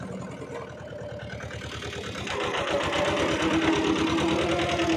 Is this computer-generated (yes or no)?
no